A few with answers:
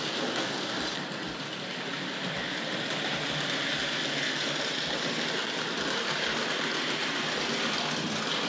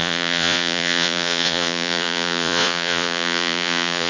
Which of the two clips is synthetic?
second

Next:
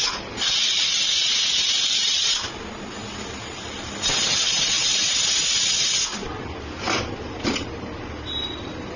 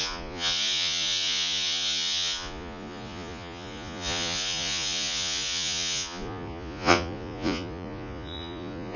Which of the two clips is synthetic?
second